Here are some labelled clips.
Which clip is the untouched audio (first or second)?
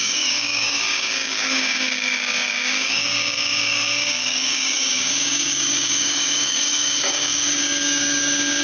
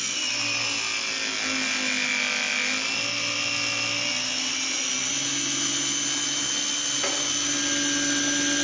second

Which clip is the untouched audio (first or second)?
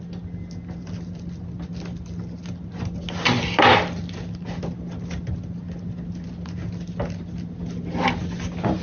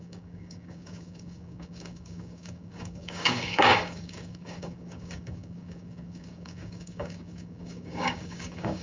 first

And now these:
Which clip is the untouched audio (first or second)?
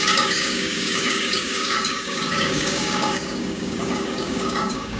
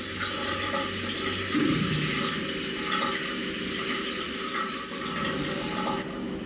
second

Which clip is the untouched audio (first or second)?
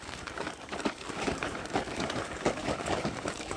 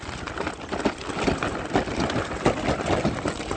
second